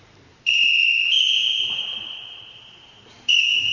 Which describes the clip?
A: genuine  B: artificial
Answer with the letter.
B